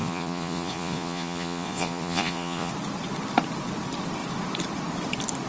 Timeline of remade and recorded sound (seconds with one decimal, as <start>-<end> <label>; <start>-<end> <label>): 0.0-2.7 remade; 2.7-5.5 recorded